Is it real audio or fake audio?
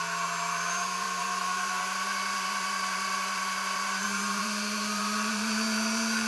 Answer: fake